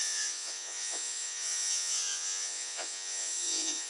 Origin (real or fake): fake